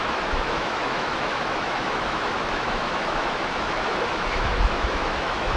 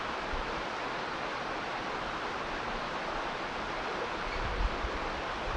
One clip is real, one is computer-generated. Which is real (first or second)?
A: second